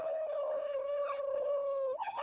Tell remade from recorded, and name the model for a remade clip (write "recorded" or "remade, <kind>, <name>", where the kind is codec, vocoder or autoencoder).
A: remade, codec, HILCodec